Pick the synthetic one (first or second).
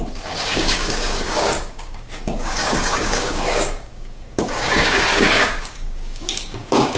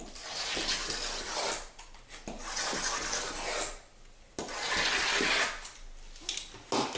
first